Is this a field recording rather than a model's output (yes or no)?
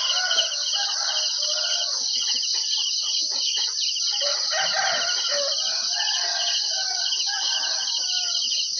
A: yes